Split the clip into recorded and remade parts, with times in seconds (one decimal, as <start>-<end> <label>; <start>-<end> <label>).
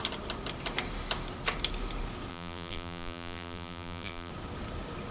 0.0-2.3 recorded; 2.3-4.3 remade; 4.3-5.1 recorded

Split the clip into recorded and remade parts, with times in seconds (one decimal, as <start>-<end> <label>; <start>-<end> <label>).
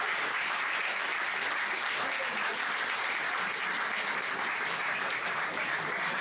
0.0-1.1 remade; 1.1-4.5 recorded; 4.5-6.2 remade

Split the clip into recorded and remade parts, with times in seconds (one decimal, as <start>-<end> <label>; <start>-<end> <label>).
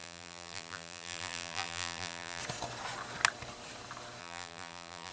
0.0-2.4 remade; 2.4-4.2 recorded; 4.2-5.1 remade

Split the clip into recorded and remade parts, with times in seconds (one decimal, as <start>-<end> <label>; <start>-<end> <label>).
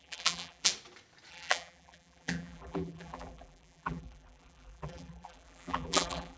0.0-0.7 remade; 0.7-1.3 recorded; 1.3-6.4 remade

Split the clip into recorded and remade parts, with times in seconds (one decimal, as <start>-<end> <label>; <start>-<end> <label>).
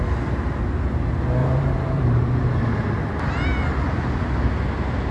0.0-1.4 recorded; 1.4-2.6 remade; 2.6-5.1 recorded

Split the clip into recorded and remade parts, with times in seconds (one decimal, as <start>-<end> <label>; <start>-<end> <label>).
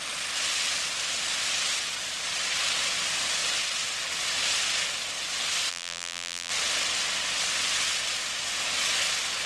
0.0-5.7 recorded; 5.7-6.5 remade; 6.5-9.5 recorded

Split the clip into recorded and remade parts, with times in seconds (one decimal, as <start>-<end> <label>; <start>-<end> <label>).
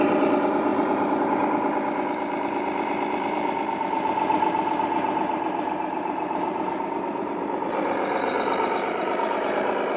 0.0-10.0 remade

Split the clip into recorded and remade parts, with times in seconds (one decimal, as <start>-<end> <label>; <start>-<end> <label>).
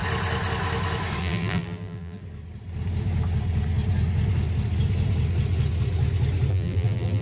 0.0-1.2 recorded; 1.2-2.2 remade; 2.2-6.5 recorded; 6.5-7.2 remade